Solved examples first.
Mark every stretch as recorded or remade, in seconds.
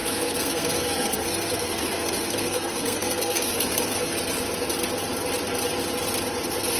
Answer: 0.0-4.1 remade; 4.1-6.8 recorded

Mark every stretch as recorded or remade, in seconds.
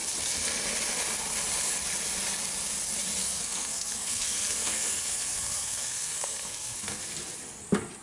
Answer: 0.0-3.2 recorded; 3.2-7.0 remade; 7.0-8.0 recorded